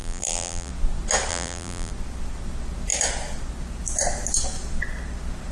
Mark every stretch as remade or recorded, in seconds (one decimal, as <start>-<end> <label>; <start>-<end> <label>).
0.0-0.7 remade; 0.7-1.3 recorded; 1.3-1.9 remade; 1.9-5.5 recorded